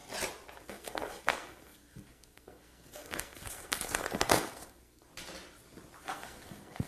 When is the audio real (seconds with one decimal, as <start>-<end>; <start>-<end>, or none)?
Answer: 0.0-0.6; 5.1-6.0